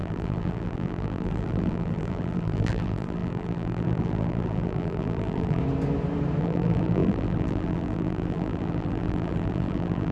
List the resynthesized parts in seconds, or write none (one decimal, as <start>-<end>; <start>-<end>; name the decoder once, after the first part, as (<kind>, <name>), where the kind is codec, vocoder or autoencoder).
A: 0.0-5.6 (vocoder, BigVGAN v2); 6.4-10.1